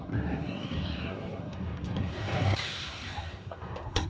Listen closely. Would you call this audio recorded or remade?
remade